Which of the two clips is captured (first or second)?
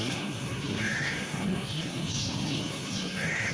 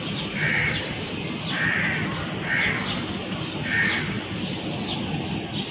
second